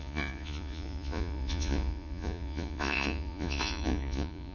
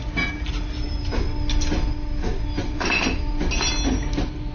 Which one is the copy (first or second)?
first